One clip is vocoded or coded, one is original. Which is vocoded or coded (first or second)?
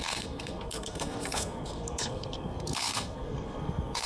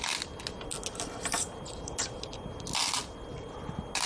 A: first